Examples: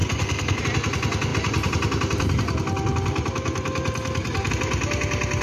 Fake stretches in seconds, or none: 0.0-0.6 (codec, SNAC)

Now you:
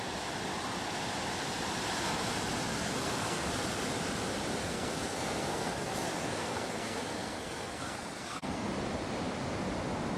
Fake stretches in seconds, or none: 2.8-3.6 (codec, SNAC); 4.6-8.7

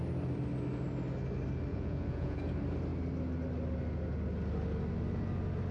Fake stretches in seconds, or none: 1.7-2.4 (vocoder, Vocos)

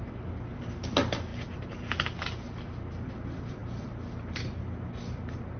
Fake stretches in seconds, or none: none

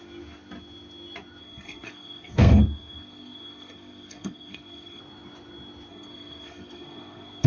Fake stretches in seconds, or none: 1.4-5.0 (codec, SNAC); 5.9-7.5

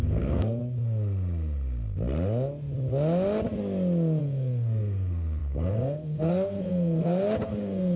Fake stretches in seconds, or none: 0.0-0.6 (codec, SNAC); 4.2-8.0

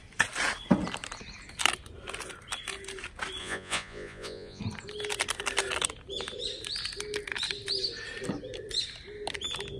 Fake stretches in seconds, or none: 3.4-4.6 (vocoder, Vocos)

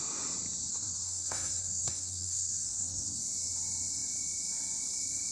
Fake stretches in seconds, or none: 0.7-3.2 (codec, SNAC)